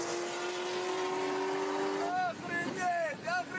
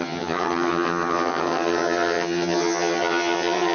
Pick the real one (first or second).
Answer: first